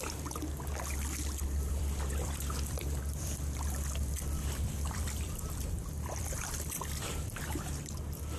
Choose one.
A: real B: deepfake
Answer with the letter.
B